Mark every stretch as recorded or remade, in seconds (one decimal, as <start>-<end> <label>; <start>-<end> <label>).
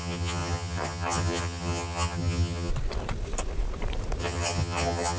0.0-2.7 remade; 2.7-4.2 recorded; 4.2-5.2 remade